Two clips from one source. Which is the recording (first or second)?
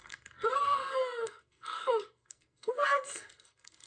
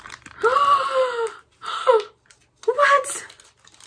second